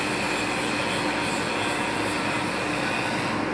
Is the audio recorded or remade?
recorded